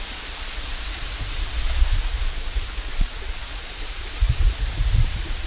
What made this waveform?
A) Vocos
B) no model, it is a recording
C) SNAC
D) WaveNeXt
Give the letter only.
A